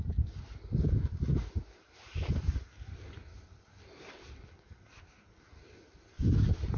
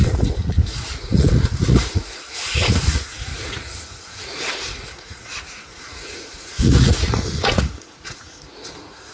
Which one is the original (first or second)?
first